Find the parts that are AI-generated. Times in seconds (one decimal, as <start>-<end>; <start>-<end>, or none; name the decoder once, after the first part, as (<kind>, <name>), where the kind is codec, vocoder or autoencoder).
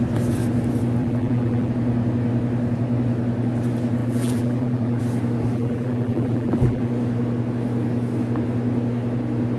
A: 1.0-1.7 (vocoder, BigVGAN v2); 4.0-5.0; 5.5-6.9